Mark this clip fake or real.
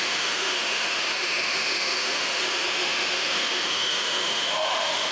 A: fake